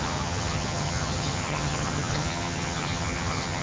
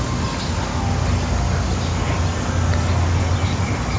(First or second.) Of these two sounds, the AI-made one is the first